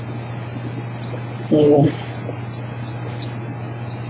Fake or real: real